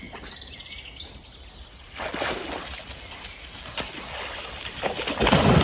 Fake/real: real